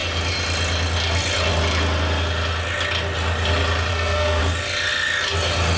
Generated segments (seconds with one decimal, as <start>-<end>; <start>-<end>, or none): 3.9-4.4